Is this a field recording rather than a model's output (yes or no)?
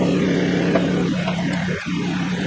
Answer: yes